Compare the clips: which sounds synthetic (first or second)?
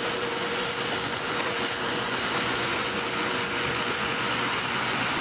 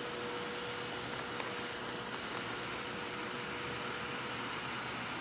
first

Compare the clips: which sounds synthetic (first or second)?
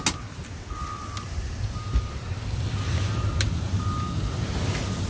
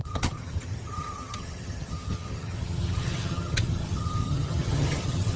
second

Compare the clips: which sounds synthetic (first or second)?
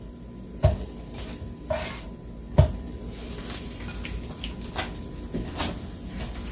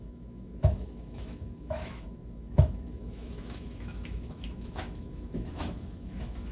second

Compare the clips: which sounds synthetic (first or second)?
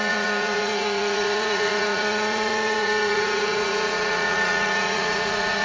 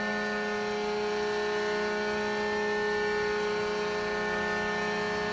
first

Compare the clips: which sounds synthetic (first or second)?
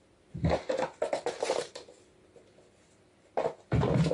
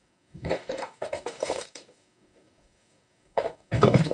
second